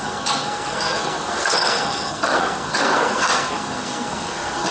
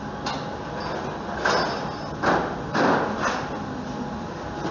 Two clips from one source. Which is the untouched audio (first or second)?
second